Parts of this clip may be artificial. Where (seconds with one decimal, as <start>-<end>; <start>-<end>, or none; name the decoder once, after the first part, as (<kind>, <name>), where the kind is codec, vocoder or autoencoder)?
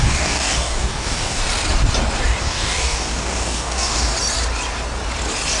0.0-1.4 (codec, DAC); 2.4-4.1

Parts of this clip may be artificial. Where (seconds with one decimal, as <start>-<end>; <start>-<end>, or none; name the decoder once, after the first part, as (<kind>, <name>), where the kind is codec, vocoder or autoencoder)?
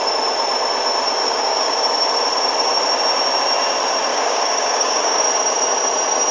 1.2-1.7 (codec, DAC); 4.1-5.2